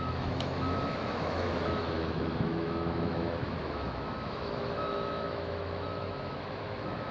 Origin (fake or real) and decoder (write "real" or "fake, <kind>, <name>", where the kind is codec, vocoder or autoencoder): fake, autoencoder, DAC-VAE